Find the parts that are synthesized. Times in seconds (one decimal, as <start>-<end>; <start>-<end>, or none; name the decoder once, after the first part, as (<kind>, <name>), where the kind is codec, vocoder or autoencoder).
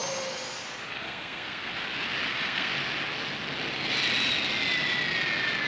0.9-1.7 (codec, SNAC); 2.3-2.7